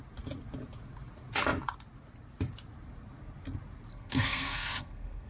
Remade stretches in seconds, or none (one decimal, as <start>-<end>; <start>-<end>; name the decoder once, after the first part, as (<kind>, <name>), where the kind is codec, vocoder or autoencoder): 3.9-5.3 (codec, SNAC)